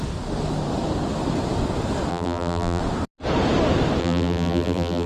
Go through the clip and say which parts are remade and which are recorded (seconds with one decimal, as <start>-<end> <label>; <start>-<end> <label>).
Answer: 0.0-2.1 recorded; 2.1-2.8 remade; 2.8-4.0 recorded; 4.0-5.1 remade